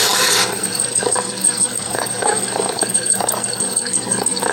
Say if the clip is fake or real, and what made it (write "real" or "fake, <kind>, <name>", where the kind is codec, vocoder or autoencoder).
fake, codec, SNAC